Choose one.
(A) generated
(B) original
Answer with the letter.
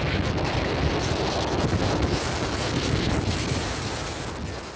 B